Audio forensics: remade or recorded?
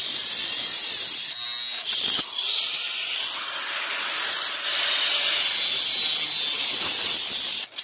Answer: recorded